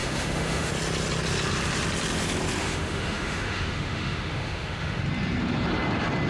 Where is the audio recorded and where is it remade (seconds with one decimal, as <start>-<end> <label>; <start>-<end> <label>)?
0.0-0.7 remade; 0.7-2.6 recorded; 2.6-5.0 remade; 5.0-6.3 recorded